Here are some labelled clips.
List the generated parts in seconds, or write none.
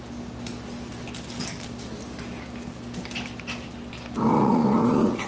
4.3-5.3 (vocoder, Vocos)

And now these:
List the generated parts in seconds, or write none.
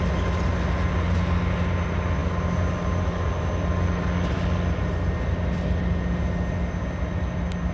none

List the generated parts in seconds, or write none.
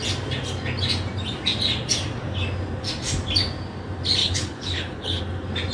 4.2-5.2 (codec, HILCodec)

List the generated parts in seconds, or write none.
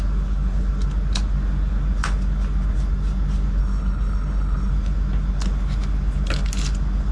3.6-4.7 (codec, HILCodec)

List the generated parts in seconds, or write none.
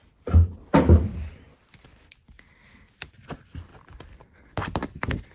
none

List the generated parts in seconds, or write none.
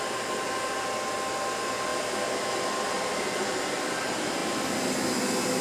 none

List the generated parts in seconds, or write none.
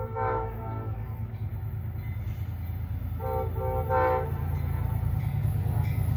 0.0-1.5 (codec, DAC); 5.2-6.2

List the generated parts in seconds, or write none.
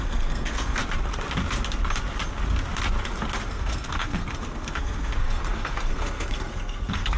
0.0-0.8 (codec, SNAC); 3.5-7.2